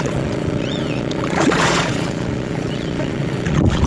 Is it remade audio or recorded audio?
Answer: remade